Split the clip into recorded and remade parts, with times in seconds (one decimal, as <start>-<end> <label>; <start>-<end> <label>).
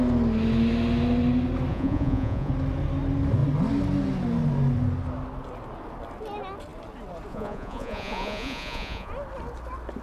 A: 0.0-1.7 recorded; 1.7-2.5 remade; 2.5-7.3 recorded; 7.3-9.1 remade; 9.1-10.0 recorded